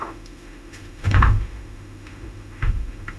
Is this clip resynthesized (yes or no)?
yes